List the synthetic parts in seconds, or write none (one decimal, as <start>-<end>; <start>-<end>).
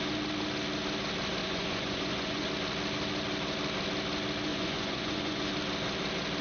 1.4-2.5; 4.5-5.5